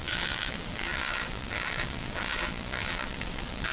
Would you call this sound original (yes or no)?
no